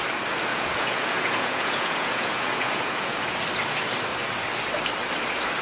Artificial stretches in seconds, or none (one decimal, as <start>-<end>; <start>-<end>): 0.5-3.4